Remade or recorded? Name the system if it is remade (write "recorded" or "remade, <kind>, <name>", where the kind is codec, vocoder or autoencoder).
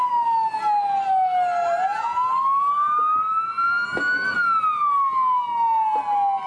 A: recorded